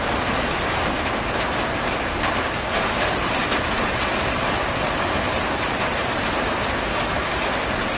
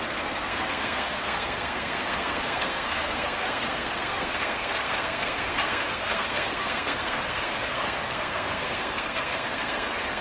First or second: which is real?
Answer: first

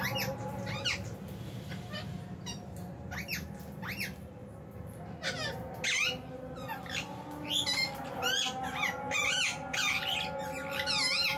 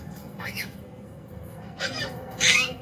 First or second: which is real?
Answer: first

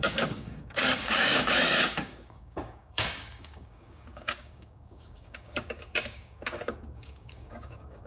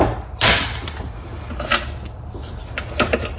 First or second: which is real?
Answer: second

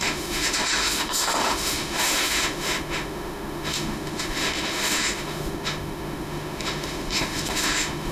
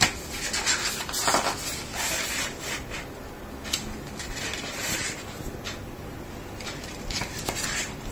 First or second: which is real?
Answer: second